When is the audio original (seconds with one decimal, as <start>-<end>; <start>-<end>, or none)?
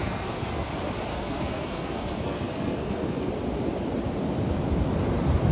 0.7-1.1; 3.3-5.5